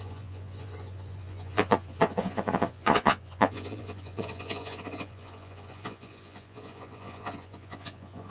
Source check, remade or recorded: remade